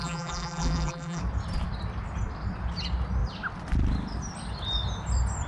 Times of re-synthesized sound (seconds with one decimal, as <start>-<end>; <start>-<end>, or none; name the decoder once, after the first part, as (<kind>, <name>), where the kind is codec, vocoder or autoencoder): 0.0-1.2 (vocoder, BigVGAN v2)